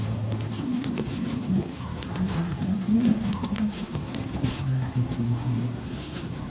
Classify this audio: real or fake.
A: fake